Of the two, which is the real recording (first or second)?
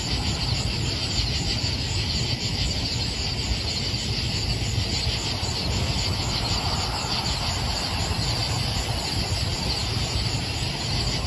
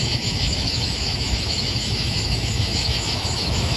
first